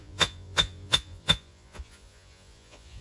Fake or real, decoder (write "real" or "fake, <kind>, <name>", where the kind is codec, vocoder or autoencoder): fake, vocoder, Vocos